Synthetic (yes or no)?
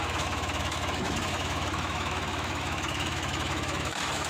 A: yes